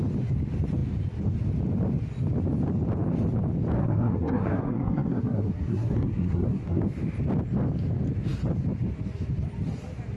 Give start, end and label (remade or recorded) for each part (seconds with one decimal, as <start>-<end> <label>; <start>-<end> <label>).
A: 0.0-3.8 recorded; 3.8-6.8 remade; 6.8-10.2 recorded